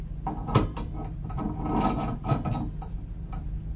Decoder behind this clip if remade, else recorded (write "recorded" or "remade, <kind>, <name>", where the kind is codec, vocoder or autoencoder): recorded